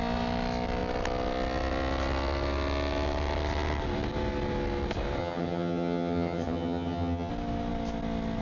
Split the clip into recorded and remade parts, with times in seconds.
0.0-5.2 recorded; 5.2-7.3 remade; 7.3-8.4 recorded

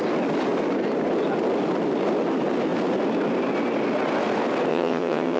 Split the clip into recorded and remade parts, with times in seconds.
0.0-4.7 recorded; 4.7-5.4 remade